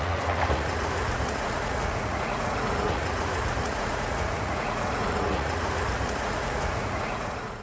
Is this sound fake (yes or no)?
yes